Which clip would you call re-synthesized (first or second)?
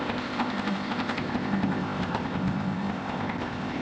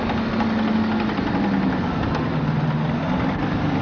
first